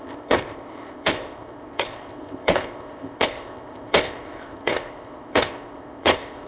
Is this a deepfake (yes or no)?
yes